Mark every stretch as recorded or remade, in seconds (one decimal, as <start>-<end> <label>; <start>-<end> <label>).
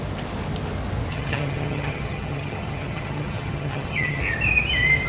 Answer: 0.0-1.1 recorded; 1.1-4.2 remade; 4.2-5.1 recorded